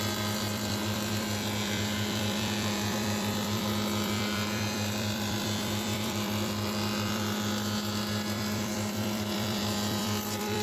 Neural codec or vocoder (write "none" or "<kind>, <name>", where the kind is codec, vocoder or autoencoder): vocoder, BigVGAN v2